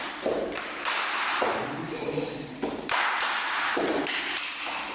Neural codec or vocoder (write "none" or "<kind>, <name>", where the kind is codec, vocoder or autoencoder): vocoder, BigVGAN v2